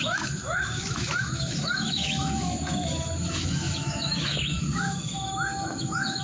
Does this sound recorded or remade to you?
remade